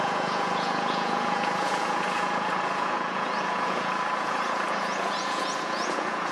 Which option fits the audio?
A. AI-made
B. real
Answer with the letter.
A